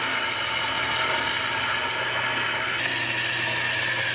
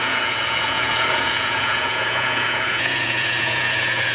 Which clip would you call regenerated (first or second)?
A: second